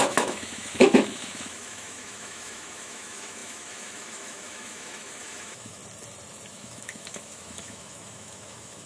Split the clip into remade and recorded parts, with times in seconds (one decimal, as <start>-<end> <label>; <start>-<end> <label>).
0.0-5.8 remade; 5.8-6.5 recorded; 6.5-8.9 remade